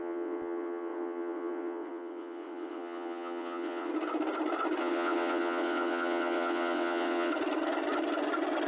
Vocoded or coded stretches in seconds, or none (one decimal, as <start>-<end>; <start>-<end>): 0.0-3.9; 4.8-7.3

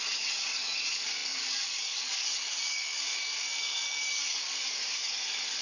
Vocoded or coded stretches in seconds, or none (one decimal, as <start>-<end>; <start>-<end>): 0.0-5.6

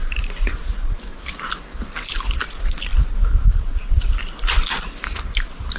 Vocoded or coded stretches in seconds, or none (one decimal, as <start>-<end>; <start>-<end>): 0.0-0.6; 2.9-4.5